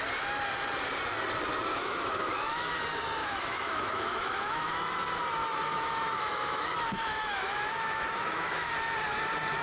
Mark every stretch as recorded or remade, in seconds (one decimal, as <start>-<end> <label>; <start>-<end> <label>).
0.0-1.7 recorded; 1.7-2.8 remade; 2.8-3.2 recorded; 3.2-4.7 remade; 4.7-5.4 recorded; 5.4-8.7 remade; 8.7-9.6 recorded